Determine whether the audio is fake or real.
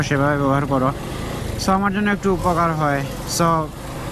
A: real